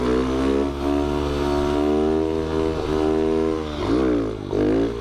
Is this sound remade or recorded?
recorded